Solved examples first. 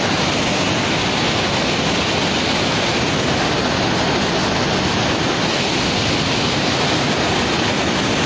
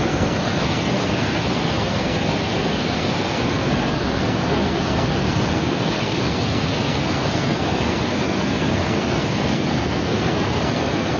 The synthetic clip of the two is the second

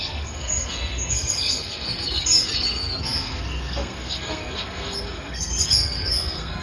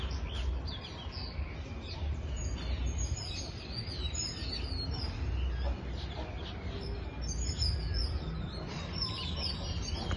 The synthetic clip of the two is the first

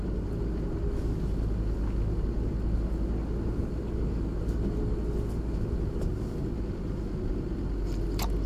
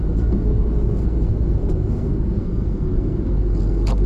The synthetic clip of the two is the second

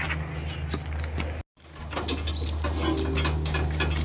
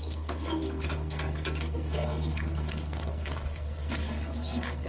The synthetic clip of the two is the second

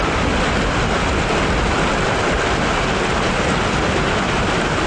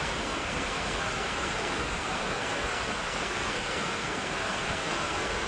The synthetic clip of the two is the second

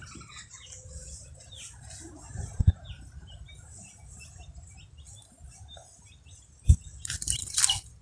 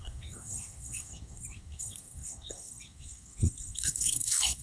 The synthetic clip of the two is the second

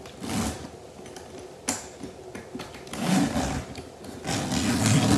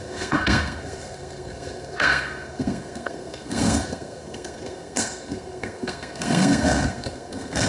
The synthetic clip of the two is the second